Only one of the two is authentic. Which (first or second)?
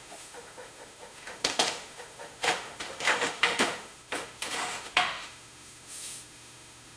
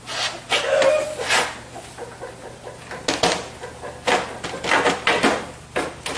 second